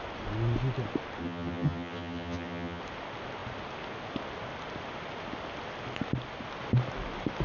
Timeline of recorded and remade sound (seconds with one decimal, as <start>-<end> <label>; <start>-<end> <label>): 0.0-1.2 recorded; 1.2-2.8 remade; 2.8-7.4 recorded